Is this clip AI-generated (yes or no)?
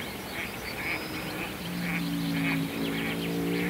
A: no